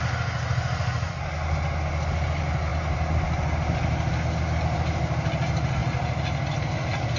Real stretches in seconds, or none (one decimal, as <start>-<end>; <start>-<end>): 0.0-7.2